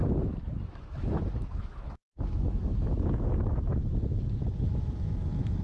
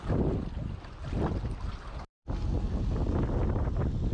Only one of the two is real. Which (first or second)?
second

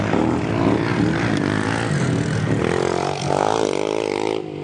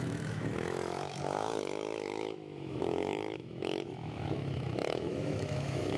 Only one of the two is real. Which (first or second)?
first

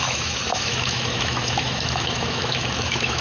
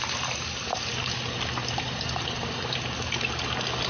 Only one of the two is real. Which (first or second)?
second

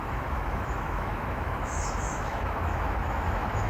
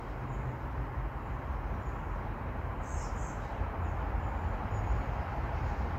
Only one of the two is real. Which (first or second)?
second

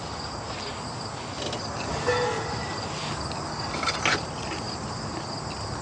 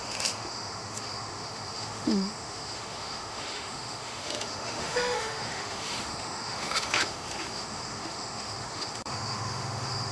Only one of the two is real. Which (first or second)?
first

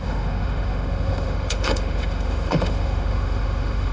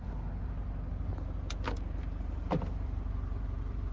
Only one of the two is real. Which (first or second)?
second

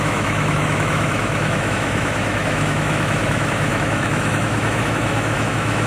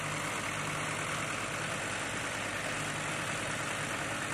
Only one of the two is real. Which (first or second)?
second